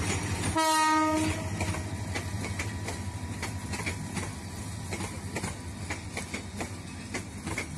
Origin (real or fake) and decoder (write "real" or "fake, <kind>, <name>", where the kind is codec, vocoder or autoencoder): real